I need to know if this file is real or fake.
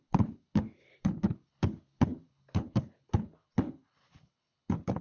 fake